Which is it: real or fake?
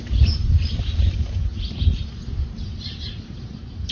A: fake